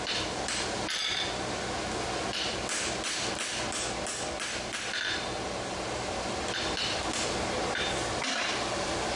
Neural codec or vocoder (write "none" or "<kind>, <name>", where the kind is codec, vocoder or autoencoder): none